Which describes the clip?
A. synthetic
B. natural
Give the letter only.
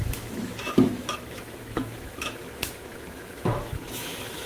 A